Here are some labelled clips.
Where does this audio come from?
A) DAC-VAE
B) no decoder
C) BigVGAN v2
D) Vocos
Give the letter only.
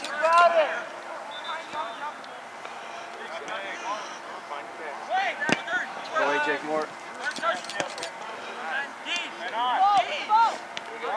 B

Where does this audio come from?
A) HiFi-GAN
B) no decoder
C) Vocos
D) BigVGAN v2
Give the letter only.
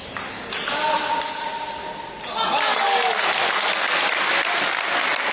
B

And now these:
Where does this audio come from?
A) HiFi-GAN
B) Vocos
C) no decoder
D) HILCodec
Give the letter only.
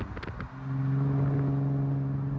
C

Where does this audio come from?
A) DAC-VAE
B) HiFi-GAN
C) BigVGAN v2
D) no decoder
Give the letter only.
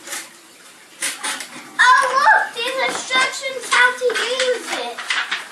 C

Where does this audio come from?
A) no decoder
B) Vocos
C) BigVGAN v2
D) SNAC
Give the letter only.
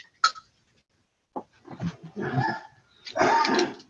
A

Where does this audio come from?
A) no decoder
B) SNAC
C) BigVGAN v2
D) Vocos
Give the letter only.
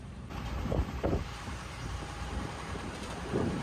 C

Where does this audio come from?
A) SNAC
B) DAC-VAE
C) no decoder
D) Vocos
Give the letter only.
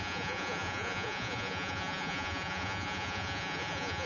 D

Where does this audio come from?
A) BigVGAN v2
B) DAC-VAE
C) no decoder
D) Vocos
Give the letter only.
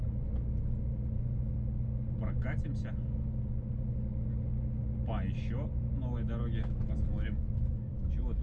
C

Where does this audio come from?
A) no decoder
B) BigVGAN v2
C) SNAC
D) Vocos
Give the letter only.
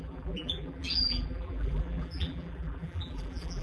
B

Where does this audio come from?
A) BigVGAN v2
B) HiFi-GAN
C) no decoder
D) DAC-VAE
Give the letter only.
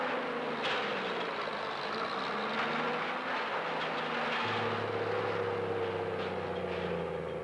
C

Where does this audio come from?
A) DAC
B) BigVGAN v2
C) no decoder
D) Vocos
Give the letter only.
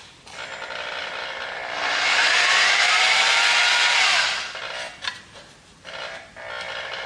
C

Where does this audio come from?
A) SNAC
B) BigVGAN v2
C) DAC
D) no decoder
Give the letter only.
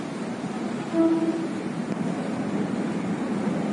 D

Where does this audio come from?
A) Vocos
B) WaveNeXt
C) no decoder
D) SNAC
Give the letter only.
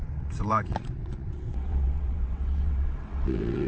B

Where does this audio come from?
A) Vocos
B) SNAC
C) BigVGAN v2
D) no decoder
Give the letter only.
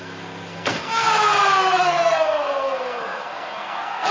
B